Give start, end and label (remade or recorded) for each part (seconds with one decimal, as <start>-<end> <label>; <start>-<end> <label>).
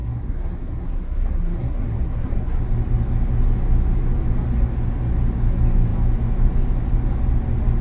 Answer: 0.0-2.6 remade; 2.6-7.8 recorded